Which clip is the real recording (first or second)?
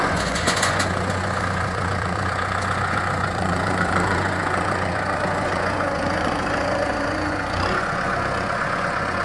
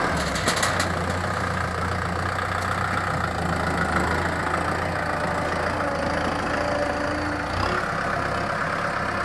second